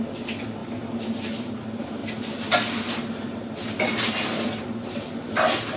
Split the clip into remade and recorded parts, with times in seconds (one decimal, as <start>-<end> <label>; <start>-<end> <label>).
0.0-5.8 recorded